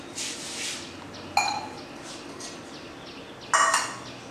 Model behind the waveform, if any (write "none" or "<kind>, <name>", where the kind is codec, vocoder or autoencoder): none